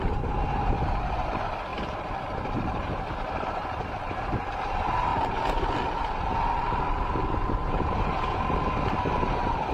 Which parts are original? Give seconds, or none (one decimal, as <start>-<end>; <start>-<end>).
0.0-9.7